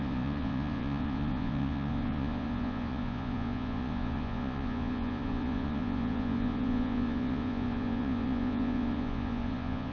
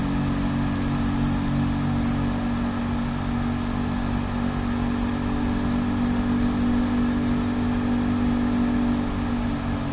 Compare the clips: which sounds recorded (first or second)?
second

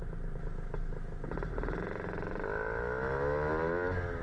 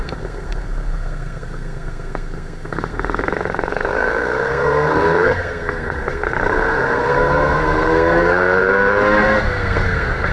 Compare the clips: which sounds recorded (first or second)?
first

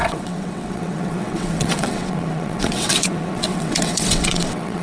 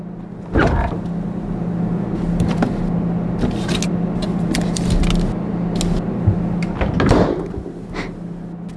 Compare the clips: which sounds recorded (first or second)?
second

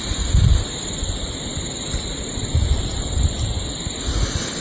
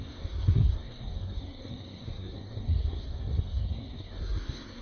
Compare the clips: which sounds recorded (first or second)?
first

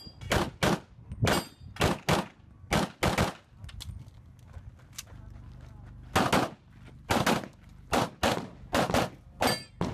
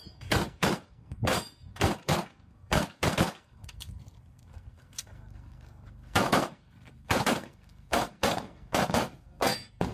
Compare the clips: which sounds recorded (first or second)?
first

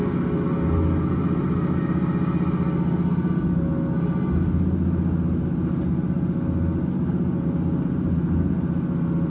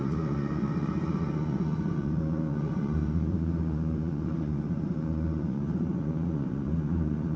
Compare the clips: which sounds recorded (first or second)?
first